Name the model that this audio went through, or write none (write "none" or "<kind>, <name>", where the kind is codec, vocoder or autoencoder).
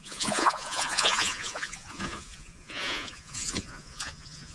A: vocoder, Vocos